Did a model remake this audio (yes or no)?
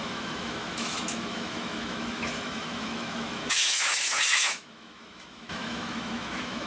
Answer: yes